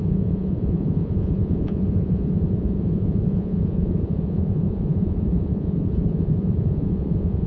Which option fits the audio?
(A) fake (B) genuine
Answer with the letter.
A